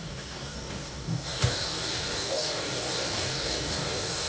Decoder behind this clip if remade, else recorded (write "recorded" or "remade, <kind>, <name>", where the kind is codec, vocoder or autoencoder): remade, codec, DAC